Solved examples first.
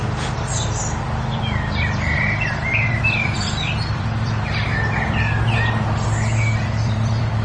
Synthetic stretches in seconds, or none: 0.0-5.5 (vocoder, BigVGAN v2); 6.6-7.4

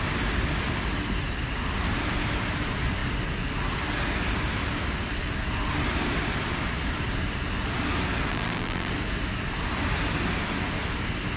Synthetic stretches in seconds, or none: 8.3-8.9 (vocoder, BigVGAN v2)

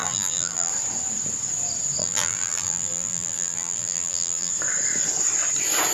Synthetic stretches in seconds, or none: 0.0-0.7 (vocoder, BigVGAN v2); 2.0-4.5

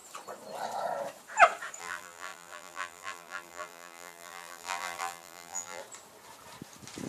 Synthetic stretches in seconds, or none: 1.8-5.8 (vocoder, BigVGAN v2)

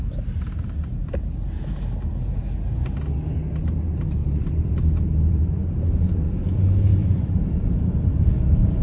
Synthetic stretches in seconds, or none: 4.2-5.8 (vocoder, BigVGAN v2); 6.9-8.8

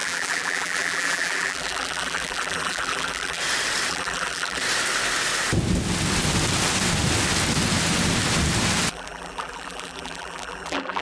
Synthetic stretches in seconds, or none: 0.0-3.4 (vocoder, BigVGAN v2); 3.9-4.6; 8.9-11.0

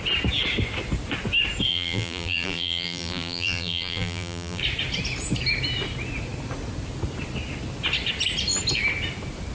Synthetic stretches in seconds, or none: 1.7-4.6 (vocoder, BigVGAN v2)

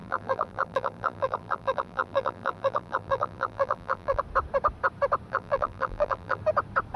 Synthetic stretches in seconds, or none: 0.0-4.2 (vocoder, BigVGAN v2); 5.3-6.4